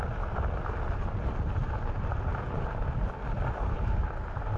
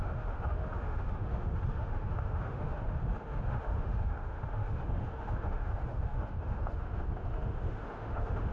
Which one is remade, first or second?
second